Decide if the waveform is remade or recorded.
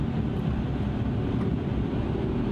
remade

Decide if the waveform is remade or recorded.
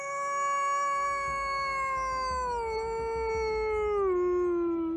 recorded